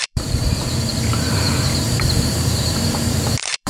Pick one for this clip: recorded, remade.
remade